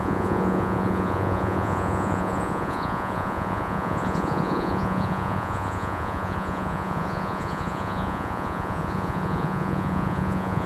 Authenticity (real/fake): fake